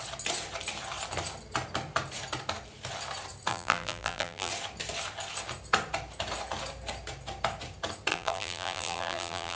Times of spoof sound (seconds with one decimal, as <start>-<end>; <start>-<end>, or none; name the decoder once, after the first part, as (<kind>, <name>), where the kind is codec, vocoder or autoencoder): 3.5-4.5 (vocoder, BigVGAN v2); 8.1-9.6